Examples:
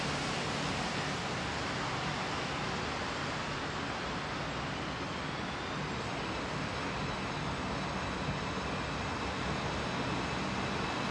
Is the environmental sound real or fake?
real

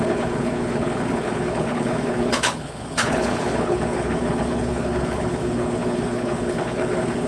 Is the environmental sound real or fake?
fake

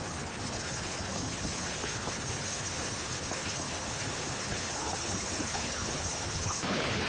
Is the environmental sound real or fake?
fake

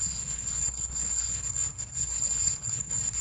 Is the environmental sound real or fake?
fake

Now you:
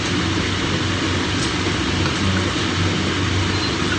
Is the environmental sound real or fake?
real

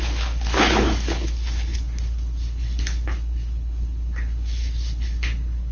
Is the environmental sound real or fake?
fake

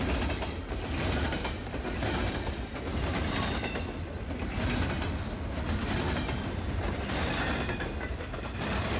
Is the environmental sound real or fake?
real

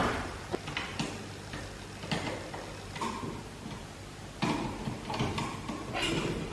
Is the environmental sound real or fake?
real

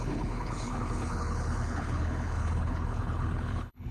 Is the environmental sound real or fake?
fake